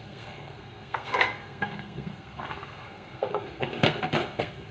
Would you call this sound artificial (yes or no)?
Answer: yes